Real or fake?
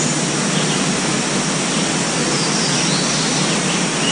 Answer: real